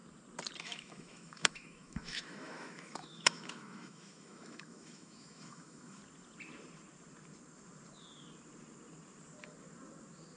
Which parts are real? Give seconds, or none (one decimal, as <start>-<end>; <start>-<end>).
0.0-0.6; 6.0-10.4